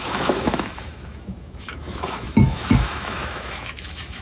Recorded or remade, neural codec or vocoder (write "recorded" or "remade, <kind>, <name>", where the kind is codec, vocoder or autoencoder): remade, autoencoder, DAC-VAE